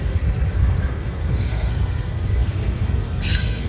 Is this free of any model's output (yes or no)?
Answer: no